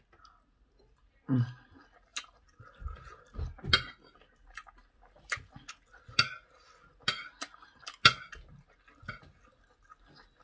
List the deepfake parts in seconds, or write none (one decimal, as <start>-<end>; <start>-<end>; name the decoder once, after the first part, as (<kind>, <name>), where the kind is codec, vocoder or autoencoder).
none